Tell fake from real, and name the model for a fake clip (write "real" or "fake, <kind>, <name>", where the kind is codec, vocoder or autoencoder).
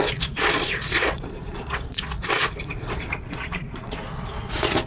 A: fake, vocoder, Vocos